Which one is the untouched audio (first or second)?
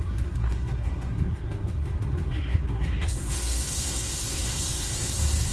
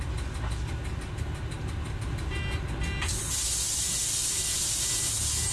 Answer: second